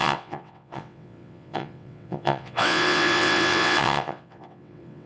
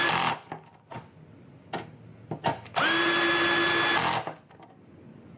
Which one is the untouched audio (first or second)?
second